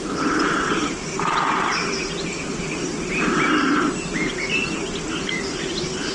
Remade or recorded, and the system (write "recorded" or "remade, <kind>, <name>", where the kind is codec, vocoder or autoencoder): recorded